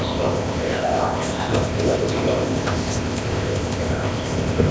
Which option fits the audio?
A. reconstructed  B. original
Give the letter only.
A